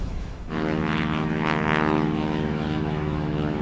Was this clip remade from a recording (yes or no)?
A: yes